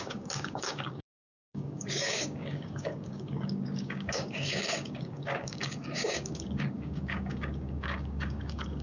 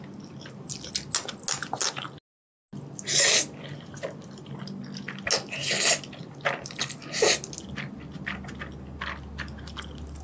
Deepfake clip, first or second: first